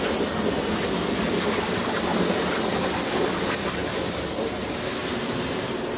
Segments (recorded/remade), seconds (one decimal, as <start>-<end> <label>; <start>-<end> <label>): 0.0-6.0 recorded